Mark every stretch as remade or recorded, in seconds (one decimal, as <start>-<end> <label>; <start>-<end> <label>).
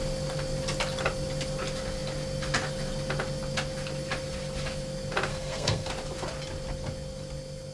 0.0-5.3 recorded; 5.3-5.9 remade; 5.9-7.7 recorded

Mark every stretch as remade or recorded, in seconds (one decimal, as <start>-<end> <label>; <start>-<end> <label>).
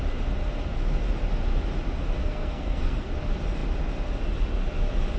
0.0-2.2 recorded; 2.2-3.1 remade; 3.1-5.2 recorded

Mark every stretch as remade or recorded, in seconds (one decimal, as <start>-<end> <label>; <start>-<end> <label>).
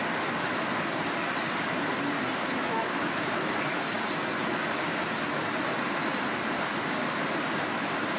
0.0-2.4 recorded; 2.4-3.2 remade; 3.2-8.2 recorded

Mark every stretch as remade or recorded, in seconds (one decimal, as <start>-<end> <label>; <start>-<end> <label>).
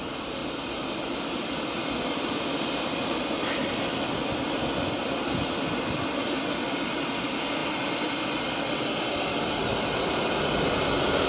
0.0-7.6 remade; 7.6-11.3 recorded